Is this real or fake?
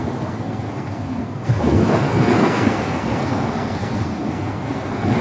fake